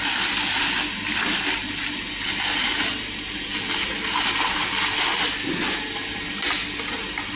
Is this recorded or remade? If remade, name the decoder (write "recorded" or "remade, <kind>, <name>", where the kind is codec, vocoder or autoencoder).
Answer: recorded